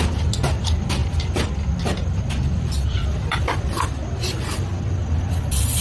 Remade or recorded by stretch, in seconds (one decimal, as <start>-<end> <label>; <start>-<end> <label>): 0.0-5.8 recorded